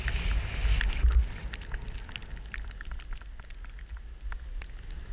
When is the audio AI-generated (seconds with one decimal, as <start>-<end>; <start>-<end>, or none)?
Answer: none